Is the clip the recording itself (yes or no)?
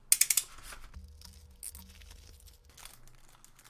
yes